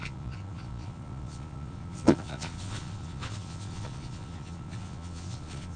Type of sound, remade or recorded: remade